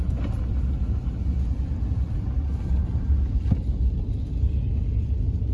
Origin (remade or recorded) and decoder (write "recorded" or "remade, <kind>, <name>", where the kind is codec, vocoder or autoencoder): recorded